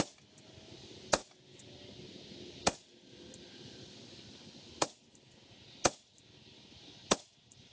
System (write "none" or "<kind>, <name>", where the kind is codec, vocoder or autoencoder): none